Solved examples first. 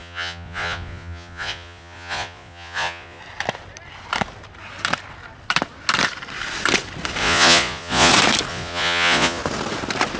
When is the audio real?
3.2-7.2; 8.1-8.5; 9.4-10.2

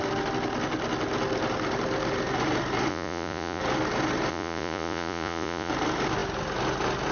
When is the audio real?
0.0-2.9; 3.6-4.3; 5.7-7.1

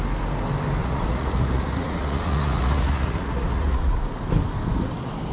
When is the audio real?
0.0-0.8; 4.0-5.3

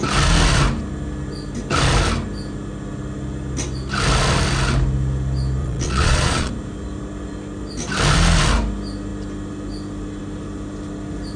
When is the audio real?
0.0-5.6; 6.5-11.4

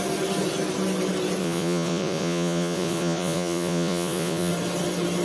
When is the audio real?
0.0-1.4; 4.5-5.2

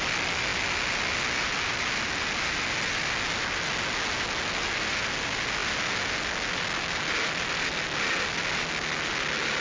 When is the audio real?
0.0-9.6

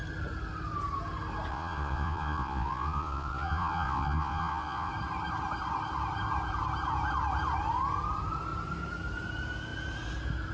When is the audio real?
0.0-1.5; 4.9-10.5

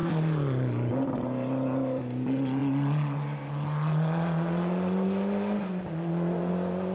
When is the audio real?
0.0-6.9